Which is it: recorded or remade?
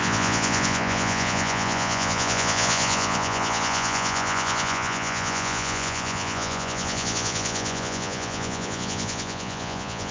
remade